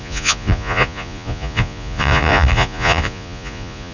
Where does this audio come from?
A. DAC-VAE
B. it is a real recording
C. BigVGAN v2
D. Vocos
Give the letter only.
D